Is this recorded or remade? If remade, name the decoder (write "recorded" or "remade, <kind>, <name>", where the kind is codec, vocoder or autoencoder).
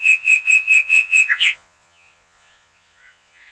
remade, vocoder, Vocos